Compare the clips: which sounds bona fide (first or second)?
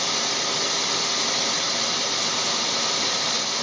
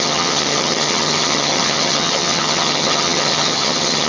first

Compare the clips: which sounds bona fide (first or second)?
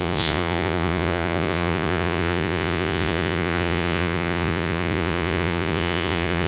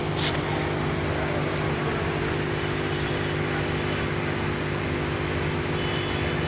second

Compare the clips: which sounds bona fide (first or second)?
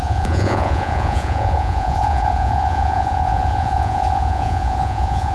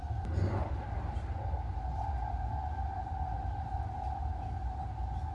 second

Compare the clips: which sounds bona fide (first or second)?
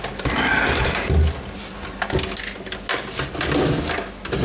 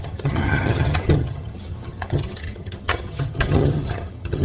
first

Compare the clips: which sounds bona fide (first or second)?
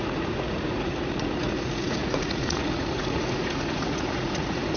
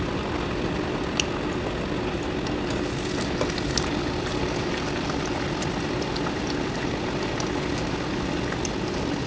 second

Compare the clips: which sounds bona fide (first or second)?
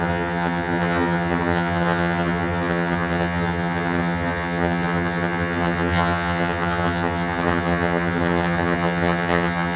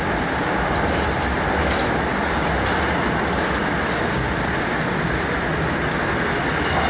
second